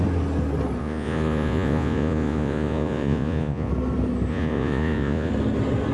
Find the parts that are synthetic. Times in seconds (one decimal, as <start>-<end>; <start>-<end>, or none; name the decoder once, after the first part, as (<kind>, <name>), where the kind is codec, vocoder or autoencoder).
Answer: 0.8-3.7 (vocoder, Vocos); 4.3-5.3